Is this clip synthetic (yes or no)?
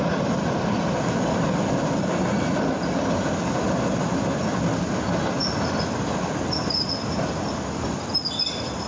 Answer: no